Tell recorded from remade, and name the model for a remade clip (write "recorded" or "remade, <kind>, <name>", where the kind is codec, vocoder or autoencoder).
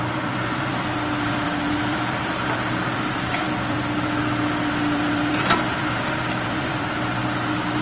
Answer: remade, vocoder, BigVGAN v2